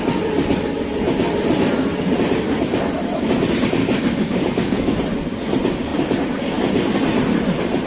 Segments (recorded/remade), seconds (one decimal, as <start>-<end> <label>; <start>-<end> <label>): 0.0-3.8 recorded; 3.8-5.0 remade; 5.0-7.9 recorded